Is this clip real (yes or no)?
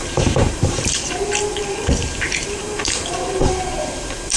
no